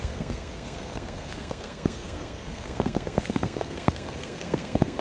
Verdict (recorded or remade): remade